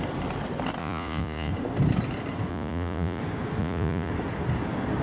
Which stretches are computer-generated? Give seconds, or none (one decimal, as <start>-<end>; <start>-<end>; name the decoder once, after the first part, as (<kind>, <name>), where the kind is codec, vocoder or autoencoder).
0.8-1.5 (vocoder, Vocos); 2.5-3.2; 3.6-4.1